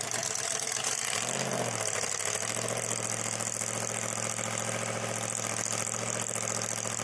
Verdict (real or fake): real